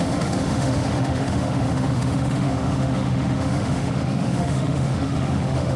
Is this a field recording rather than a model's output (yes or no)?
no